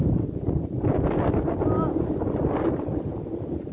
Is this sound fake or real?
real